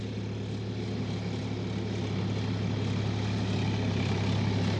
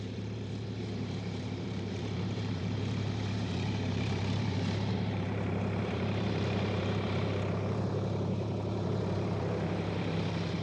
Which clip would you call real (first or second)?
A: first